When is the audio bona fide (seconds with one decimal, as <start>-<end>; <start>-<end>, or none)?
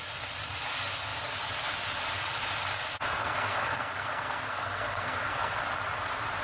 0.0-3.2; 5.6-6.4